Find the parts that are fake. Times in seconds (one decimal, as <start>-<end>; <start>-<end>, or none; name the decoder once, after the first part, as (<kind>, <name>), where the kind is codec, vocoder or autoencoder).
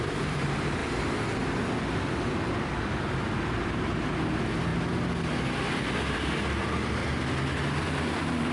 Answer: 0.0-0.8 (vocoder, BigVGAN v2); 2.9-4.7; 5.7-7.0; 7.8-8.5